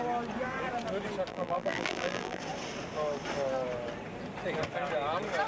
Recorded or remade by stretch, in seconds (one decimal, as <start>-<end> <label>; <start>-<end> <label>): 0.0-1.3 recorded; 1.3-2.4 remade; 2.4-5.5 recorded